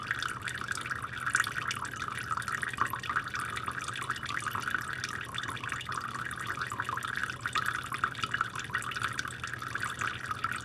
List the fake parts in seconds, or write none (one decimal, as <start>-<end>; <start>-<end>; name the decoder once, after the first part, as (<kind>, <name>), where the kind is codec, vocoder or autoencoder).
5.9-6.7 (vocoder, BigVGAN v2); 7.2-7.8